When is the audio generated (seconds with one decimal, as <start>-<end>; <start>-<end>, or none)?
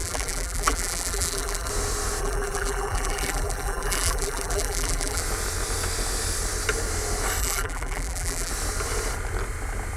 0.0-1.7; 2.2-5.2; 7.4-8.5